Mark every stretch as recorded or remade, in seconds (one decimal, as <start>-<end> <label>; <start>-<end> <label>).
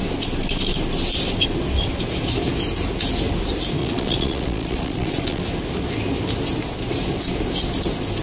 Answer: 0.0-3.8 recorded; 3.8-5.4 remade; 5.4-8.2 recorded